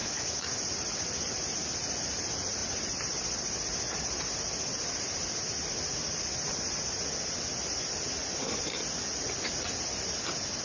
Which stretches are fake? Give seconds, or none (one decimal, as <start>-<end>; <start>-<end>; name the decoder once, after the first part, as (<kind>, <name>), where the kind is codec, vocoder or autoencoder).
0.0-0.5 (autoencoder, DAC-VAE)